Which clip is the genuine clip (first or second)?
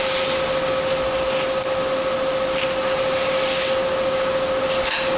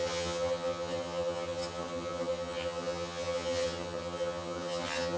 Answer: first